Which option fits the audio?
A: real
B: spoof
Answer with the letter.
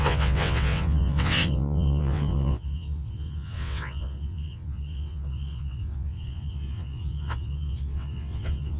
B